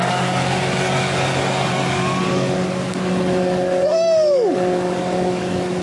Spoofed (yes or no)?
yes